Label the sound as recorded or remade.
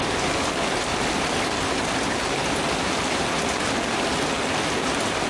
recorded